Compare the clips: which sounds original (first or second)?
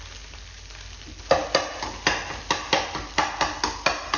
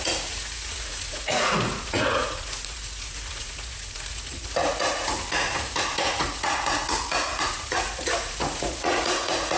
first